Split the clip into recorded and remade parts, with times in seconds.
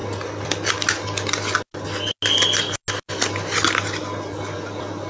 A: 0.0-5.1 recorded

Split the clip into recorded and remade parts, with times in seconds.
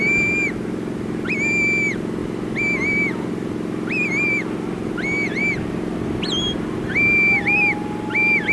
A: 0.0-8.5 recorded